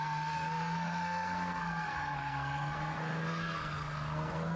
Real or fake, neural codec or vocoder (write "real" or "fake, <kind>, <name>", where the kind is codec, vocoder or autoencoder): fake, codec, SNAC